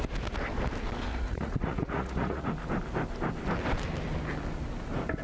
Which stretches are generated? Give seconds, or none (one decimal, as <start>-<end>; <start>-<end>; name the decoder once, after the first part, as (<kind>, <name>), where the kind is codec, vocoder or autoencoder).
1.1-2.5 (vocoder, Vocos)